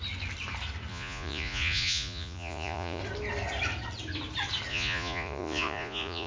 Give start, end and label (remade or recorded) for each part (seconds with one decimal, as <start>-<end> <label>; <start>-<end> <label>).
0.0-0.9 recorded; 0.9-3.0 remade; 3.0-4.7 recorded; 4.7-6.3 remade